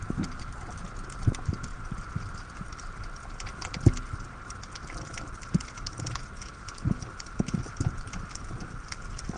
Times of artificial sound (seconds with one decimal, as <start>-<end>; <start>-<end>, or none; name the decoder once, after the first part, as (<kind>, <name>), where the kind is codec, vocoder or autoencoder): none